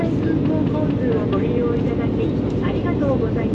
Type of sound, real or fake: real